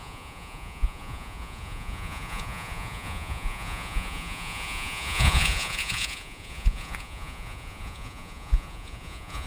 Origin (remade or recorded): remade